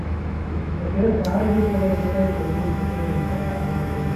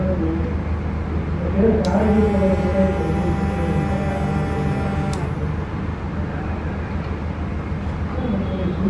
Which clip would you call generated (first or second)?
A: first